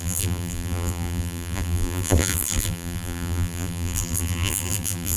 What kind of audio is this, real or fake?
fake